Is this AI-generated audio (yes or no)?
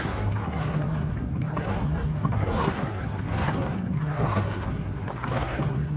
yes